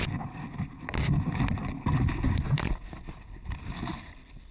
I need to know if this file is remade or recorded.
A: recorded